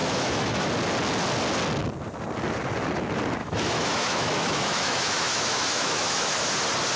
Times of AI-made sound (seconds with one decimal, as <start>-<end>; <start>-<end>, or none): 0.0-0.7; 3.4-6.4